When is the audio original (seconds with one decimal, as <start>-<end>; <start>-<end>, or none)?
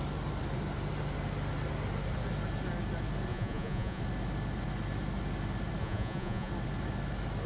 0.0-3.3; 4.0-5.8; 6.5-7.5